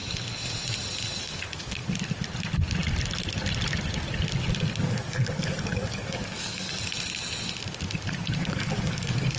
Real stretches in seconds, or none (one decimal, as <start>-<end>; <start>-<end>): 0.0-1.2; 1.8-4.8; 6.9-8.4